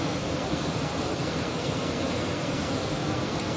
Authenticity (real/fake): fake